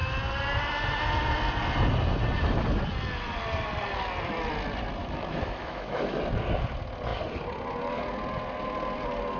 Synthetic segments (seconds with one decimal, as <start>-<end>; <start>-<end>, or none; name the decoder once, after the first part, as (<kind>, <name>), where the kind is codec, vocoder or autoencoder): 5.0-6.2 (autoencoder, DAC-VAE)